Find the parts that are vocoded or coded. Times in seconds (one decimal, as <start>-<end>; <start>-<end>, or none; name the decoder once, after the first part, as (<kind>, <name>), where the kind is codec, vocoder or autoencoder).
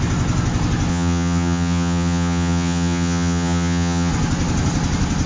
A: 0.9-4.1 (vocoder, HiFi-GAN)